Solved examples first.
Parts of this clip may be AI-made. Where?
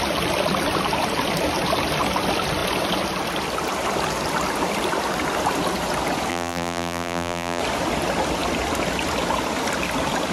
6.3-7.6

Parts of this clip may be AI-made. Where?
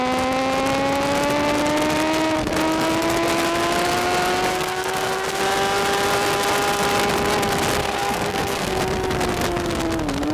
4.5-5.4; 7.8-8.8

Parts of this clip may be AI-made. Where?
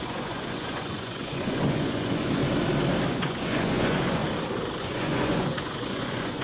0.0-2.4; 3.1-4.2; 4.8-6.4